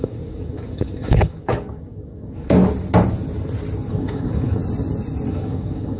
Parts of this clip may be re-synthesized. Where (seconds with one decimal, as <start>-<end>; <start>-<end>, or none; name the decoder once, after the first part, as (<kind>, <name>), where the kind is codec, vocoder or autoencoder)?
0.0-2.6 (codec, DAC); 3.9-4.6; 5.3-6.0

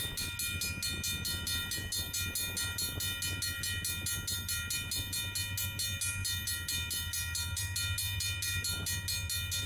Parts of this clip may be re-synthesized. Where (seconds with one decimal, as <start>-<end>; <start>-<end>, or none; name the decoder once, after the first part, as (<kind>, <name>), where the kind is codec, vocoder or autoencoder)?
none

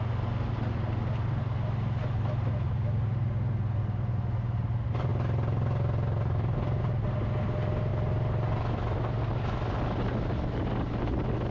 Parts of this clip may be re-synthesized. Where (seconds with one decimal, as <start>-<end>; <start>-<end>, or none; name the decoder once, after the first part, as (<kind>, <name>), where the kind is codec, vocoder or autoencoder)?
none

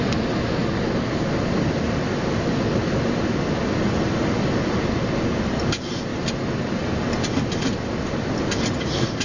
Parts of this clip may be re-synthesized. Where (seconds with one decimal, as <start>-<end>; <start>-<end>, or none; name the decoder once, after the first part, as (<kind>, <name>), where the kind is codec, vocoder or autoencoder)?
none

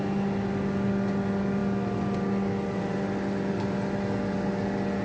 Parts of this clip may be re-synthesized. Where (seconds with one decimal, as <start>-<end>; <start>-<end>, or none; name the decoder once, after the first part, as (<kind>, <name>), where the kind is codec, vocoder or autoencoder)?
none